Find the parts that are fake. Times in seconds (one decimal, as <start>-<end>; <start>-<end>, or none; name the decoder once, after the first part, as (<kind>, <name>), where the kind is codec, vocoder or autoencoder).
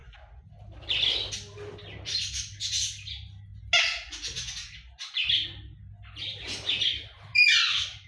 0.0-1.8 (vocoder, BigVGAN v2); 7.3-8.1